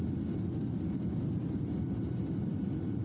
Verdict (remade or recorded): recorded